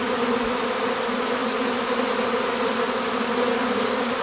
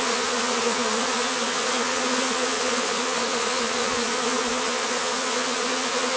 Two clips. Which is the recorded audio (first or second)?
first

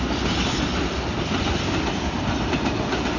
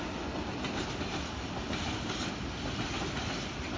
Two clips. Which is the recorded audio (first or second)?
second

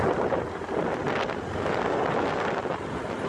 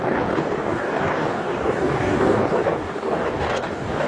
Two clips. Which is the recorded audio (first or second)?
first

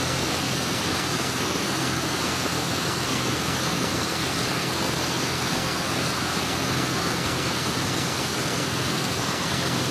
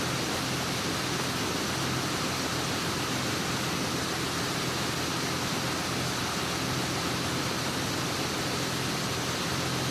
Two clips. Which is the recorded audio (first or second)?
second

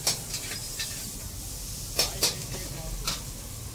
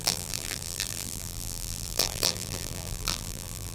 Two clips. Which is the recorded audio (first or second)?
first